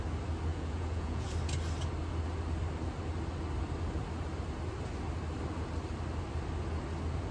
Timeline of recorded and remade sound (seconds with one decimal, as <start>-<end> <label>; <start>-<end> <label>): 0.0-0.5 recorded; 0.5-1.3 remade; 1.3-7.3 recorded